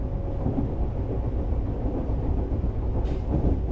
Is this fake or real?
real